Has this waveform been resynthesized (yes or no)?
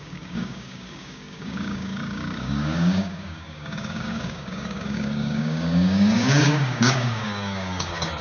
yes